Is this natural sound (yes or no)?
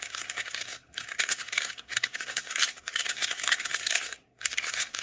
no